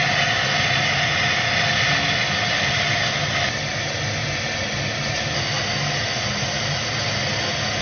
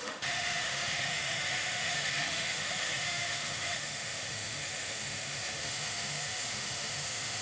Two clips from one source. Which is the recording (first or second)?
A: first